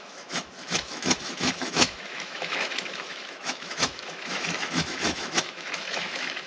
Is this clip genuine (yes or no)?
no